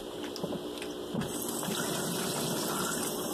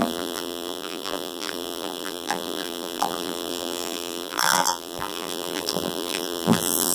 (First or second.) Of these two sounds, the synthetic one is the second